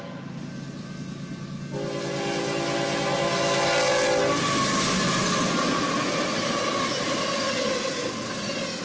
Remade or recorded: recorded